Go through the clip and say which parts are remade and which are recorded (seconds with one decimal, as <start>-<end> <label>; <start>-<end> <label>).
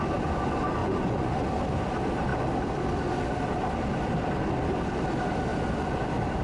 0.0-0.8 recorded; 0.8-1.3 remade; 1.3-6.4 recorded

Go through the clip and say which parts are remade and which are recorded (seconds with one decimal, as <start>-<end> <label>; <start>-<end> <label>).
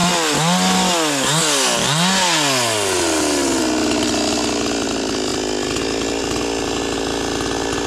0.0-7.9 recorded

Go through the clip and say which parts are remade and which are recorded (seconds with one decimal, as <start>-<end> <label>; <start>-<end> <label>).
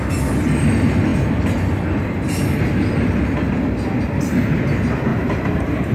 0.0-5.1 recorded; 5.1-5.9 remade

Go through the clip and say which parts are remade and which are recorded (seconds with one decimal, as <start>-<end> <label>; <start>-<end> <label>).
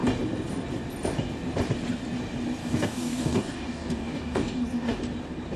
0.0-2.6 recorded; 2.6-5.0 remade; 5.0-5.6 recorded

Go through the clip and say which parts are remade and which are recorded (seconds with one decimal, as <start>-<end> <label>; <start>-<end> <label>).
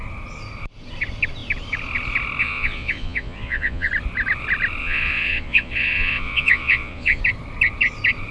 0.0-2.4 recorded; 2.4-3.9 remade; 3.9-4.8 recorded; 4.8-7.2 remade; 7.2-8.3 recorded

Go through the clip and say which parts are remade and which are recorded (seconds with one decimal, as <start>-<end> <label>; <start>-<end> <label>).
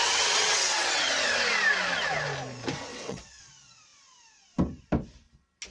0.0-1.1 remade; 1.1-2.9 recorded; 2.9-3.4 remade; 3.4-5.7 recorded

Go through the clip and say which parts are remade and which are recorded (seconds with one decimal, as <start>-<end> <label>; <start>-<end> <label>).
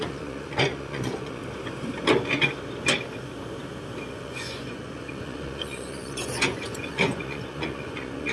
0.0-1.4 remade; 1.4-4.1 recorded; 4.1-8.3 remade